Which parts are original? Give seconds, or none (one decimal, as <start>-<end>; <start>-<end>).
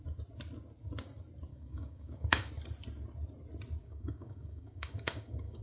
0.0-1.5; 2.5-3.8